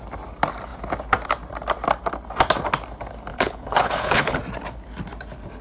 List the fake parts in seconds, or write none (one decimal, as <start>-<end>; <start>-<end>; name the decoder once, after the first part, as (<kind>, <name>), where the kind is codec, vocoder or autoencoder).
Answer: 3.3-4.4 (codec, HILCodec)